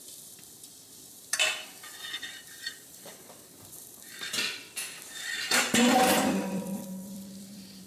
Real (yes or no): no